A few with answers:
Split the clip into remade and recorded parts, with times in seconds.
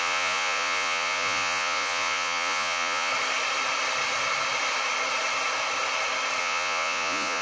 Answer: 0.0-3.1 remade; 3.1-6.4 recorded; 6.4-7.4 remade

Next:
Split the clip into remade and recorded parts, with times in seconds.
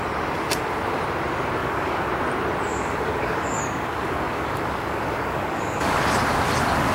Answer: 0.0-1.6 recorded; 1.6-2.1 remade; 2.1-2.7 recorded; 2.7-6.0 remade; 6.0-6.9 recorded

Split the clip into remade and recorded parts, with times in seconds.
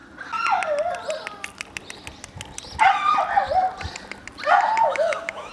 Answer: 0.0-4.8 recorded; 4.8-5.5 remade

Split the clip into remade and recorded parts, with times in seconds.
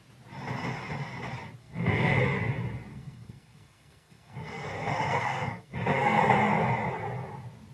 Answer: 0.0-1.6 recorded; 1.6-2.2 remade; 2.2-2.9 recorded; 2.9-6.2 remade; 6.2-7.7 recorded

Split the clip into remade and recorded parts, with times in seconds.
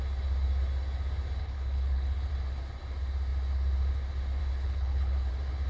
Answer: 0.0-1.4 recorded; 1.4-2.3 remade; 2.3-4.4 recorded; 4.4-5.3 remade; 5.3-5.7 recorded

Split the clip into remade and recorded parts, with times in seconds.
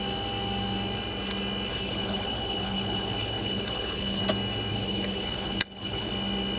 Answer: 0.0-1.7 recorded; 1.7-4.2 remade; 4.2-4.7 recorded; 4.7-6.1 remade; 6.1-6.6 recorded